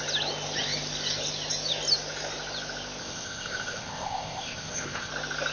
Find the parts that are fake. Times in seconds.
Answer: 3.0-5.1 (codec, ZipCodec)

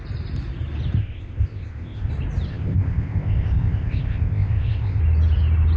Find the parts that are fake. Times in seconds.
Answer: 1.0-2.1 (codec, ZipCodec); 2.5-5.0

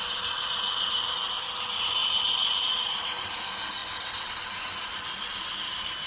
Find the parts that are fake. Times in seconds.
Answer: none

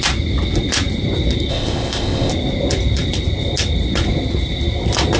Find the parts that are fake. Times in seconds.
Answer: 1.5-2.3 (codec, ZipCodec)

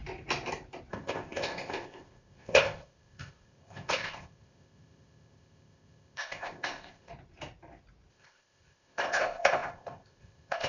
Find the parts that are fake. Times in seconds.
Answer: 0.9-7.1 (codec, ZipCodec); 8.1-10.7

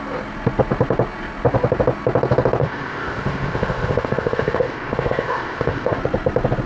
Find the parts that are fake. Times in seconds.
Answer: 2.6-6.0 (codec, ZipCodec)

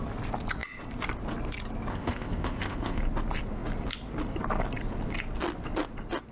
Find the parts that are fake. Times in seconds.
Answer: 1.9-3.0 (codec, ZipCodec)